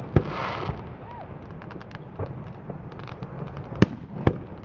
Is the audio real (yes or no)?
yes